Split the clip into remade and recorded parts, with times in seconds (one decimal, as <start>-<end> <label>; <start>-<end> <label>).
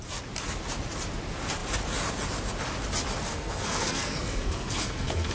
0.0-3.3 recorded; 3.3-5.3 remade